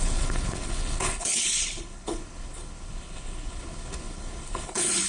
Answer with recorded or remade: remade